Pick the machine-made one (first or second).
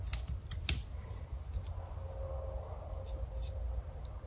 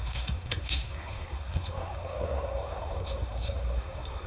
second